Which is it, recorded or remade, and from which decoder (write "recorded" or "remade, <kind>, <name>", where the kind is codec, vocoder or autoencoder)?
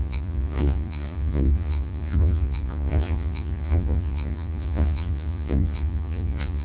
remade, vocoder, Vocos